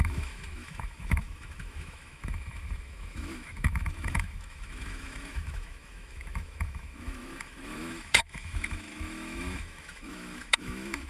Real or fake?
fake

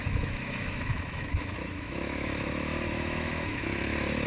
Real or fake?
fake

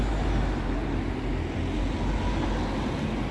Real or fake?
real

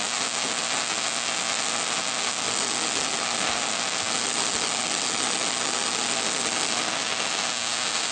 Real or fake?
real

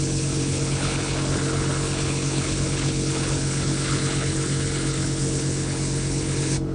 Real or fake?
fake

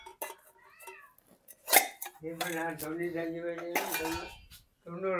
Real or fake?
real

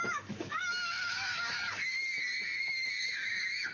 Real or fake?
fake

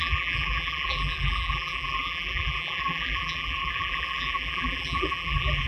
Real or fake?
fake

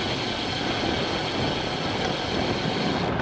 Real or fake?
real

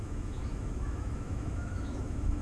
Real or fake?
fake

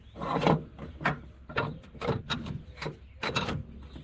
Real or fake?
real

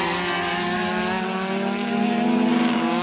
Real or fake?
real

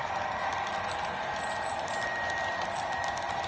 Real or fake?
real